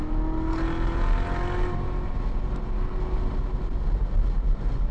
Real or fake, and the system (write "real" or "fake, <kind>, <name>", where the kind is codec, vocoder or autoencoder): real